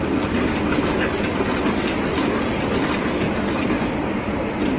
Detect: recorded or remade recorded